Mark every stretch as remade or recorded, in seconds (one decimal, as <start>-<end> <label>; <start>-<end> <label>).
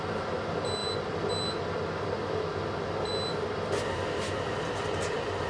0.0-5.5 recorded